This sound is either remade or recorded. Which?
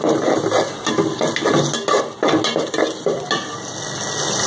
recorded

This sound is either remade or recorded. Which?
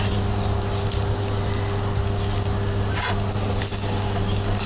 recorded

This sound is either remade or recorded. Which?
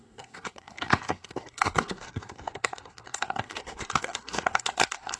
remade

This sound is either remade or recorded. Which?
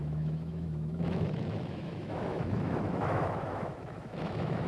remade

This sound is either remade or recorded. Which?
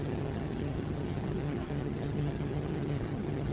remade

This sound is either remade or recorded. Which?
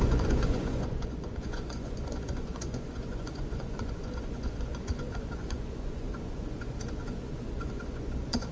remade